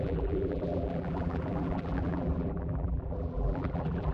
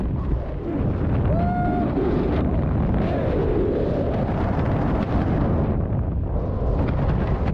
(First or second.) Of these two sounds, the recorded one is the second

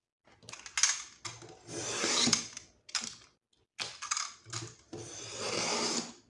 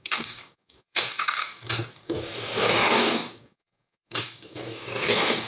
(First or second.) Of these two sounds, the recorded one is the first